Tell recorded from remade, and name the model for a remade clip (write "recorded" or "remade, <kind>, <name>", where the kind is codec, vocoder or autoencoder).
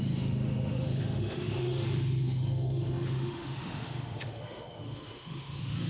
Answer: remade, autoencoder, DAC-VAE